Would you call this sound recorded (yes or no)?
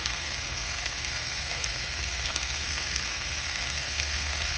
no